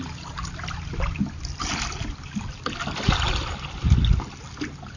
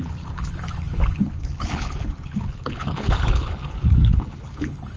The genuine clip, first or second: first